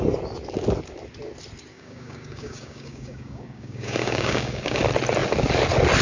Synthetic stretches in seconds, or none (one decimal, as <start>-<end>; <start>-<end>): 1.7-4.8